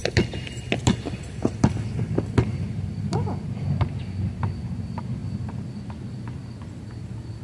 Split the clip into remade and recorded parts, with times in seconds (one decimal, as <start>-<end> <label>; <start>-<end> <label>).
0.0-7.4 recorded